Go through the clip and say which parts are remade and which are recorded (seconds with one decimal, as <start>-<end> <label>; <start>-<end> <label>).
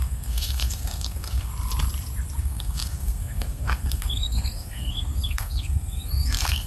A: 0.0-1.5 remade; 1.5-2.4 recorded; 2.4-6.7 remade